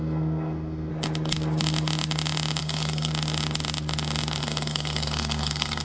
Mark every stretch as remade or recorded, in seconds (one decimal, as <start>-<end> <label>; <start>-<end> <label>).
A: 0.0-0.9 remade; 0.9-2.6 recorded; 2.6-3.1 remade; 3.1-4.4 recorded; 4.4-5.8 remade